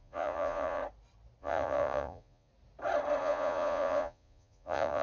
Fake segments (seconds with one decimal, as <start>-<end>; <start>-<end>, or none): 0.0-0.8; 1.4-2.5; 3.2-5.0